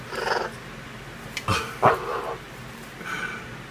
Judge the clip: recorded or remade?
recorded